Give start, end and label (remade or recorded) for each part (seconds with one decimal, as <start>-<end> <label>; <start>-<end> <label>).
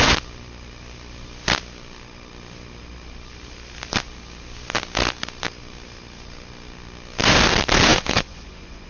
0.0-7.9 recorded; 7.9-8.9 remade